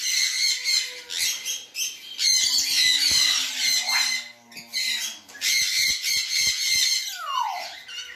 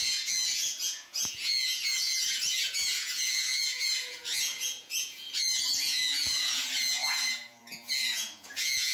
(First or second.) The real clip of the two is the first